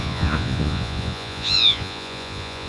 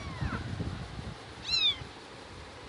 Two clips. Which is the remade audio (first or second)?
first